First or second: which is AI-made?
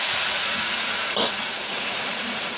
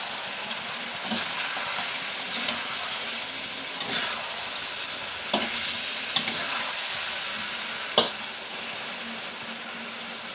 first